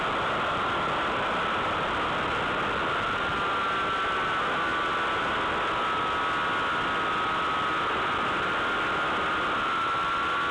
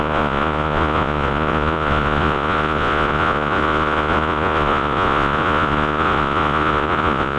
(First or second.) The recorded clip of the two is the first